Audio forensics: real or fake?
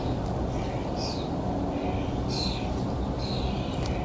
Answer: real